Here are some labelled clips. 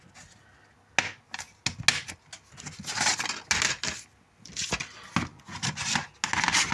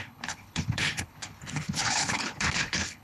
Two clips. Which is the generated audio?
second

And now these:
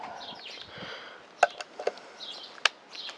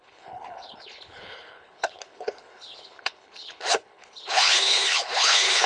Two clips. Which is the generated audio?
second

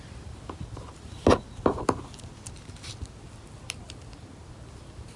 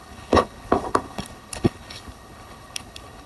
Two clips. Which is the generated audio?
second